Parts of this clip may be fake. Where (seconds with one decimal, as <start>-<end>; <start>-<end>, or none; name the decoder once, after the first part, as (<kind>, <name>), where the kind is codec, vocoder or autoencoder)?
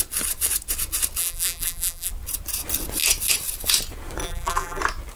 1.2-2.1 (vocoder, BigVGAN v2); 4.2-4.8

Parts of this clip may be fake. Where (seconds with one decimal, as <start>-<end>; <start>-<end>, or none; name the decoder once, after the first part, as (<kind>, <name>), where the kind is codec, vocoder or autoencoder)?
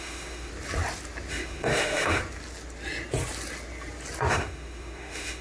0.0-0.5 (autoencoder, DAC-VAE); 1.3-2.2; 4.3-5.4